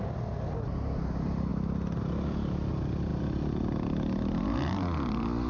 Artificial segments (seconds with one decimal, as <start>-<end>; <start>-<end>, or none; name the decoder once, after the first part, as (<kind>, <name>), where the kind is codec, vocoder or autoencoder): none